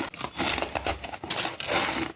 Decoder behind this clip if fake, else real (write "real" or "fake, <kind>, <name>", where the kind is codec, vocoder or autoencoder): real